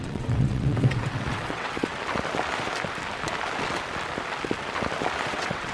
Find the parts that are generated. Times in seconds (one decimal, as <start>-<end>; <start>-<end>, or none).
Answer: 0.0-1.9; 5.3-5.7